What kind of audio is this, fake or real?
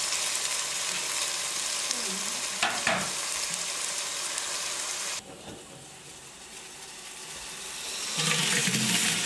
real